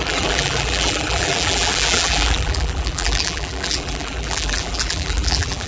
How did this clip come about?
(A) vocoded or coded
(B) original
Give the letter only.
A